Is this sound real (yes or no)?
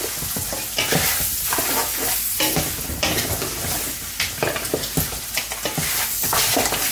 yes